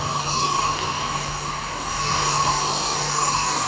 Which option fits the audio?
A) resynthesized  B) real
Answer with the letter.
A